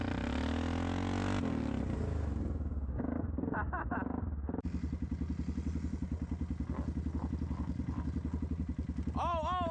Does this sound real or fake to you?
real